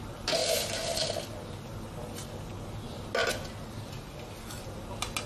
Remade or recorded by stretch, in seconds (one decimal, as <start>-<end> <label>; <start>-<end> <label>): 0.0-5.3 recorded